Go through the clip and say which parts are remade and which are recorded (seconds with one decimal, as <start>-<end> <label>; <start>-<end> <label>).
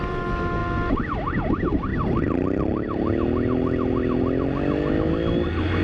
0.0-5.8 recorded